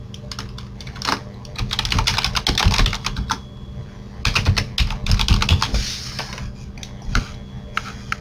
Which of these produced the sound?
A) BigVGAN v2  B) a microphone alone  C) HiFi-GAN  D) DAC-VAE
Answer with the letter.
B